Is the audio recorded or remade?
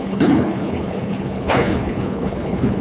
remade